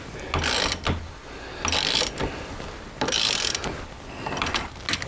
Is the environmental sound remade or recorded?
recorded